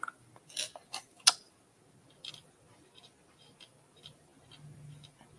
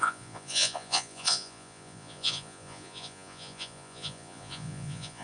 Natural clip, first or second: first